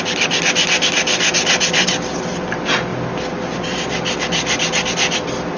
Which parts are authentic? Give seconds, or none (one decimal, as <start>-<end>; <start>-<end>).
0.0-5.6